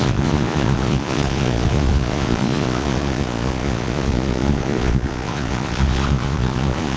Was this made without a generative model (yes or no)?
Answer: no